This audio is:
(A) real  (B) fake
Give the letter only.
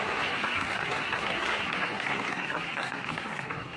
B